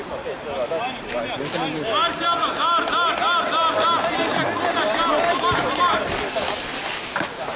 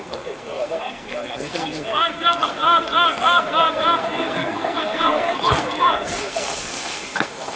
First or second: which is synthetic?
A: second